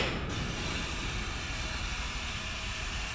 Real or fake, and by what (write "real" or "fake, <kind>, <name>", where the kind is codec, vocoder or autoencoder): fake, vocoder, BigVGAN v2